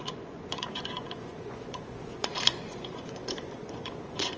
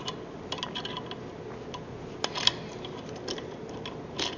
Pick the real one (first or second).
second